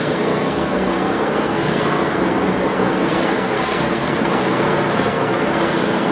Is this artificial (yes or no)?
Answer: yes